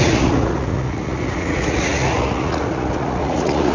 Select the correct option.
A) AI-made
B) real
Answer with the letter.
A